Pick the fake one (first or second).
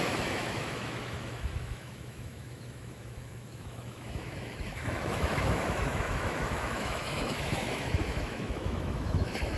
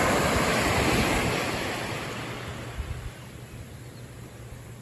first